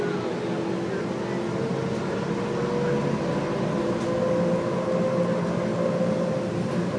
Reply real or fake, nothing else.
real